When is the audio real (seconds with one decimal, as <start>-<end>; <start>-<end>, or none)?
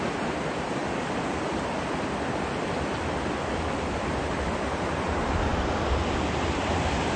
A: 0.8-3.8; 5.5-6.5